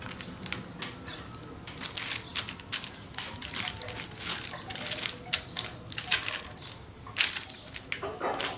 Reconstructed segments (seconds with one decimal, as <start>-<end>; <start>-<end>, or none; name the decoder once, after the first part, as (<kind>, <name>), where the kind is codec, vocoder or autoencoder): none